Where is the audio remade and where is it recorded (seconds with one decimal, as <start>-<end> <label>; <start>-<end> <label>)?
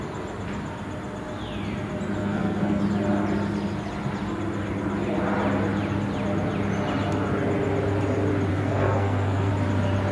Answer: 0.0-2.2 recorded; 2.2-2.8 remade; 2.8-8.5 recorded; 8.5-9.5 remade; 9.5-10.1 recorded